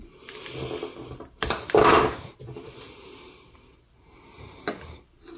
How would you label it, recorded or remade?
recorded